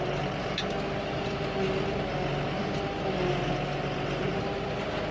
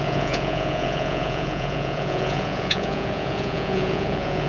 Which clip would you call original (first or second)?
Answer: first